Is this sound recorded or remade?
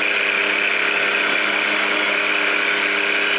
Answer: recorded